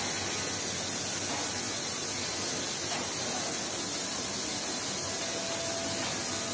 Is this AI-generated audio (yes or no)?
no